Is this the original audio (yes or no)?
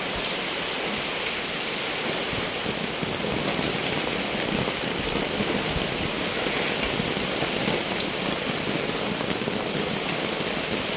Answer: yes